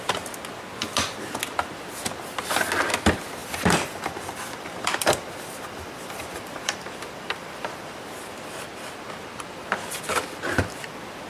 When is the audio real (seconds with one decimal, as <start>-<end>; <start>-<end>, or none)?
0.0-3.4; 8.0-11.3